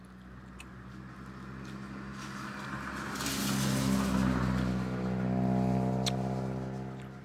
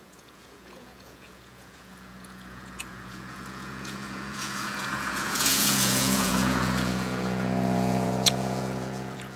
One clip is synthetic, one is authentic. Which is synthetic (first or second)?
second